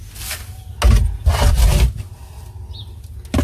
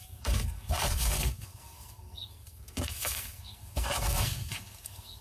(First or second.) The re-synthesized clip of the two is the second